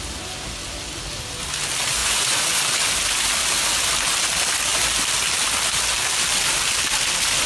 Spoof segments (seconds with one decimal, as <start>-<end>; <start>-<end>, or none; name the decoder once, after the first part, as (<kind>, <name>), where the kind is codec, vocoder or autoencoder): 2.0-2.6 (vocoder, Vocos)